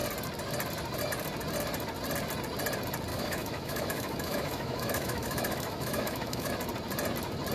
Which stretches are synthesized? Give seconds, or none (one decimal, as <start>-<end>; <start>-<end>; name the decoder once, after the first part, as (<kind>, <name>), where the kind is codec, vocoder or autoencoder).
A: 3.1-6.5 (autoencoder, DAC-VAE)